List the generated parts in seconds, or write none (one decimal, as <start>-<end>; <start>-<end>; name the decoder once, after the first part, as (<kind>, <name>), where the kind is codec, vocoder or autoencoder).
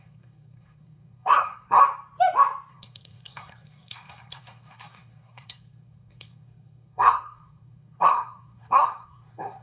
0.0-1.8 (codec, SNAC); 2.7-9.6